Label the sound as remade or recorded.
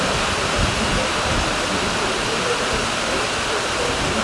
recorded